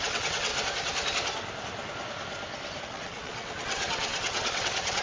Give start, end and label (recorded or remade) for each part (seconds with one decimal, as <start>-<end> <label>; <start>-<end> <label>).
0.0-0.5 remade; 0.5-2.8 recorded; 2.8-5.0 remade